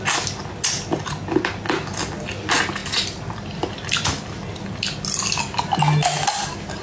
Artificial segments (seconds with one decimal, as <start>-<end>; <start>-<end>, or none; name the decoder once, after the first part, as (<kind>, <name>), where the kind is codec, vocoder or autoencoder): none